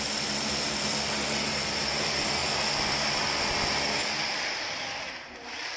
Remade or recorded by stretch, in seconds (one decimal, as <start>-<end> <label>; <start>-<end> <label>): 0.0-5.8 recorded